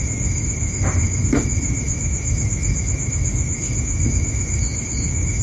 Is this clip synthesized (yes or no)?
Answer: yes